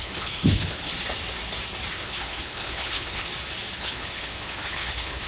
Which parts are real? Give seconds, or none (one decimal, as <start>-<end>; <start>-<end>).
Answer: 0.9-1.9; 3.3-3.8